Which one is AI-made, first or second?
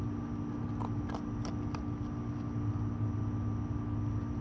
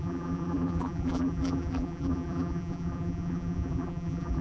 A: second